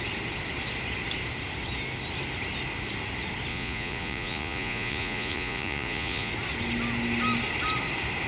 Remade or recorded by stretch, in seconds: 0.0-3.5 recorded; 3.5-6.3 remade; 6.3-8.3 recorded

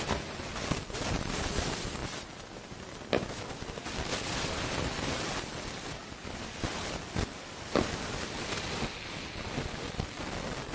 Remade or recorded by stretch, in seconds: 0.0-10.7 recorded

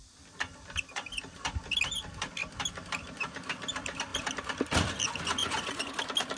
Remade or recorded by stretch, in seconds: 0.0-5.4 recorded; 5.4-5.9 remade; 5.9-6.4 recorded

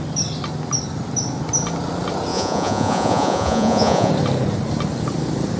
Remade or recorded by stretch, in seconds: 0.0-2.3 recorded; 2.3-4.1 remade; 4.1-5.6 recorded

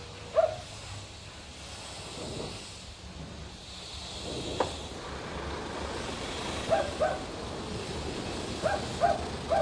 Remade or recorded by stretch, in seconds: 0.0-9.6 recorded

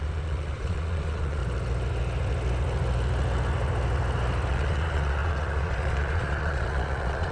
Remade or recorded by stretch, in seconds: 0.0-1.4 remade; 1.4-4.5 recorded; 4.5-7.3 remade

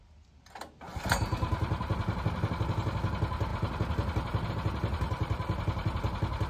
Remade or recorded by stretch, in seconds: 0.0-6.5 recorded